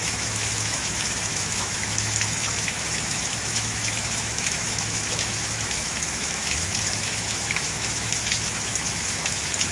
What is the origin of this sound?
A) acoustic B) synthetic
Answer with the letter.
B